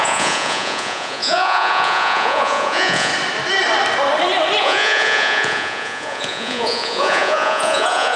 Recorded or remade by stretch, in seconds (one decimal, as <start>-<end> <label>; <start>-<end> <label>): 0.0-3.1 remade; 3.1-4.6 recorded; 4.6-8.2 remade